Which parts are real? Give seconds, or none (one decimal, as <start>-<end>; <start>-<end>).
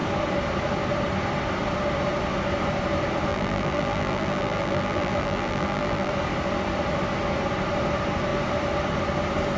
0.0-3.3; 6.1-9.6